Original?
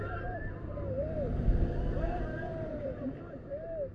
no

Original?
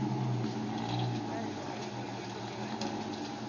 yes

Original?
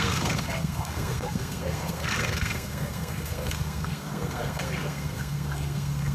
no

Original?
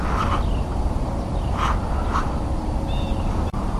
yes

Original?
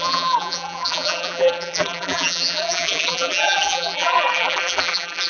no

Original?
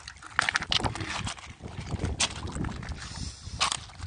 yes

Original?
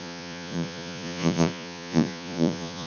no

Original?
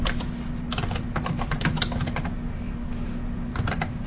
yes